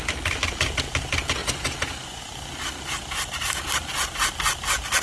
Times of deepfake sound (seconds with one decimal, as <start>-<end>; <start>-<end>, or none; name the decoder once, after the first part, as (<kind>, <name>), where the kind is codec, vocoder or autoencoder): 1.4-2.2 (vocoder, Vocos)